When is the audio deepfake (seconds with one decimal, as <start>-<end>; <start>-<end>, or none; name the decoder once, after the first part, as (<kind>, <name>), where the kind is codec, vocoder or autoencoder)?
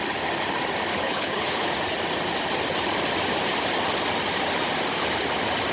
0.9-1.7 (codec, HILCodec)